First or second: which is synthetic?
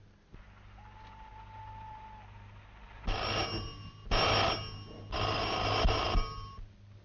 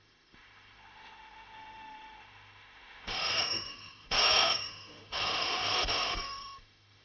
second